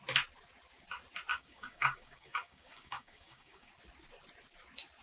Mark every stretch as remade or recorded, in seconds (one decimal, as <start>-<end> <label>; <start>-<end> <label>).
0.0-1.3 recorded; 1.3-3.7 remade; 3.7-5.0 recorded